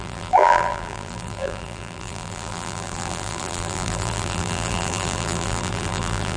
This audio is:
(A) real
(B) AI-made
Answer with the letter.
B